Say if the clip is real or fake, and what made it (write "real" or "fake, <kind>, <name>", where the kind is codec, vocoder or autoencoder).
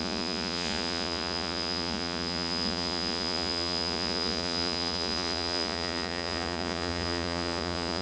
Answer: fake, vocoder, Vocos